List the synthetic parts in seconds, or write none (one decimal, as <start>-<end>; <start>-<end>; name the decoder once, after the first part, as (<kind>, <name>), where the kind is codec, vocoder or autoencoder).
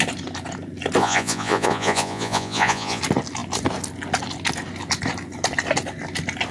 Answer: 1.0-3.0 (vocoder, Vocos)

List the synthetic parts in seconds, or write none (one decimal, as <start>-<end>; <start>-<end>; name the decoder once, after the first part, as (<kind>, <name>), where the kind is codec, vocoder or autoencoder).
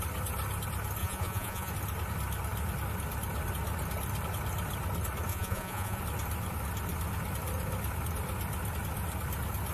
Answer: 1.0-1.7 (vocoder, Vocos); 5.3-6.0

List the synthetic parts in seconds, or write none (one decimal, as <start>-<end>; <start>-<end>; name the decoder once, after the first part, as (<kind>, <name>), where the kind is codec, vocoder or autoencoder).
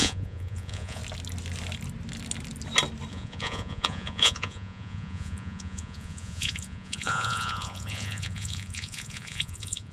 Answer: 0.0-1.0 (vocoder, Vocos); 3.1-9.9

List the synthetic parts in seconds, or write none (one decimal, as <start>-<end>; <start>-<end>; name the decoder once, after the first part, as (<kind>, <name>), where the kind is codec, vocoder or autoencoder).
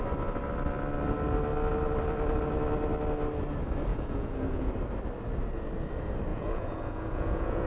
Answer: 3.9-4.7 (vocoder, Vocos); 6.3-7.7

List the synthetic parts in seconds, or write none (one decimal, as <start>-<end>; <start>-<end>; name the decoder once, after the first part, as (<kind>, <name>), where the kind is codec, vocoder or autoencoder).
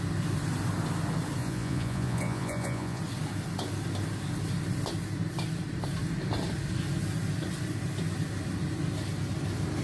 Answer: 1.4-3.0 (vocoder, Vocos)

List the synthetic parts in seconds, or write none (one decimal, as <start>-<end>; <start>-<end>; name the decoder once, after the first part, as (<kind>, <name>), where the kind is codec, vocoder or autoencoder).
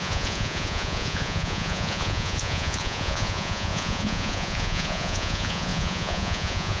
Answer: 0.0-6.8 (vocoder, Vocos)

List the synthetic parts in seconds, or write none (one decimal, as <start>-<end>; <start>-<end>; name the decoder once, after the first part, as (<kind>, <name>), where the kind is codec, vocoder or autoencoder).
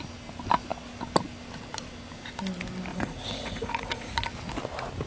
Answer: 2.9-4.2 (vocoder, Vocos)